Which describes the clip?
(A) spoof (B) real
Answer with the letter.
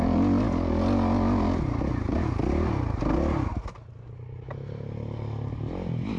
B